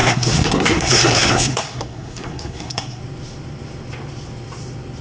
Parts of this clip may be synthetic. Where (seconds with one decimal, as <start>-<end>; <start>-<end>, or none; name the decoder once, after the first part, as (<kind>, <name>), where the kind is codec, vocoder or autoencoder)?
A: 0.0-3.0 (codec, SNAC)